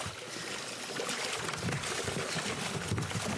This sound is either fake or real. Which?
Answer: real